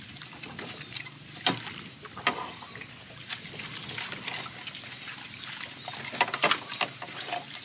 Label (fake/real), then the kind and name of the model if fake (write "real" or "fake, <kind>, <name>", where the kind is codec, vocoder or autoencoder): real